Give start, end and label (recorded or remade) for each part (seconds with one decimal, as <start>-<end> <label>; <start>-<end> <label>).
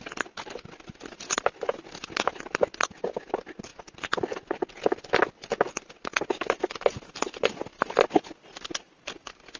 0.0-9.6 recorded